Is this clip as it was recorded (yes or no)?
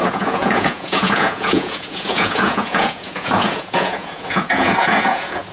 no